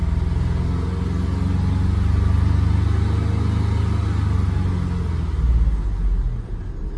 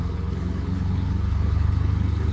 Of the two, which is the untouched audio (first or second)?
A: first